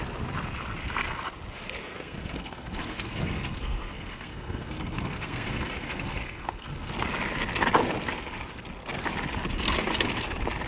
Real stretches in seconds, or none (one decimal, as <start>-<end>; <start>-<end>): 0.0-1.8; 6.9-10.7